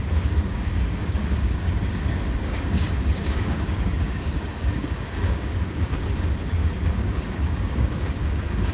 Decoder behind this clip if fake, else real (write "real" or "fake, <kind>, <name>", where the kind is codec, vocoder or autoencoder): fake, codec, DAC